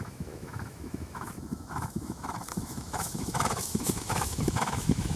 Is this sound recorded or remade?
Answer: remade